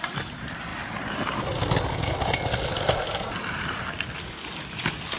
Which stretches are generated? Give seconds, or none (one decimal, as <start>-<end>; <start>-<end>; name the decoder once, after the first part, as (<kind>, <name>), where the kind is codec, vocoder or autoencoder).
none